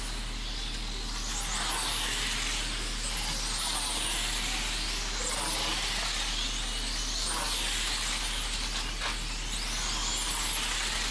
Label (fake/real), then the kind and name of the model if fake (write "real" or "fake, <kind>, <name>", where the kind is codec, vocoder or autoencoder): real